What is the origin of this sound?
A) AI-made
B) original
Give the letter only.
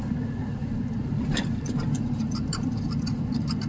B